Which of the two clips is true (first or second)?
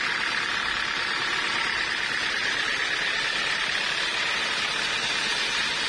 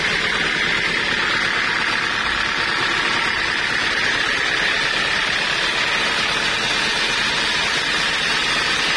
second